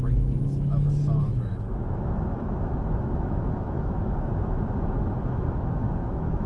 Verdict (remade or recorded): remade